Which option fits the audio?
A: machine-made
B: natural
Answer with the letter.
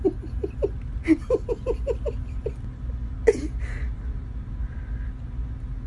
B